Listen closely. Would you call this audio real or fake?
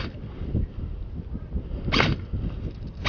real